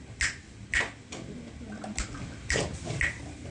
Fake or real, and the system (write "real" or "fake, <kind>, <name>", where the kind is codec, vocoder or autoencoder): real